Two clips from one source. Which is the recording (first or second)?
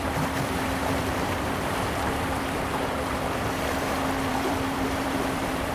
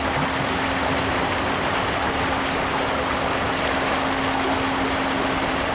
second